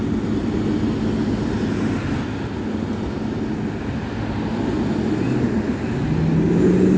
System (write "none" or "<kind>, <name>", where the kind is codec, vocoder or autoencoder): none